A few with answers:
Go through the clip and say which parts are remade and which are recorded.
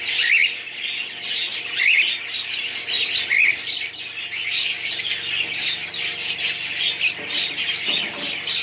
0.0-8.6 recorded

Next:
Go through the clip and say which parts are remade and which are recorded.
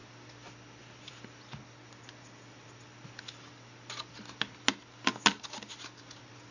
0.0-6.5 recorded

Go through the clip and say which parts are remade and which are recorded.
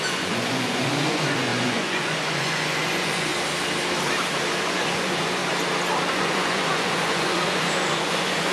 0.0-3.3 remade; 3.3-4.6 recorded; 4.6-5.4 remade; 5.4-6.1 recorded; 6.1-8.5 remade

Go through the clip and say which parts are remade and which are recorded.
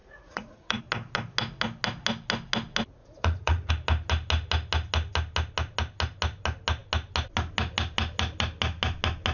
0.0-0.8 remade; 0.8-3.0 recorded; 3.0-3.7 remade; 3.7-9.3 recorded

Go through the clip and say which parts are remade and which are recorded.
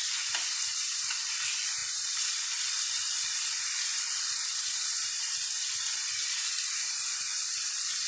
0.0-8.1 recorded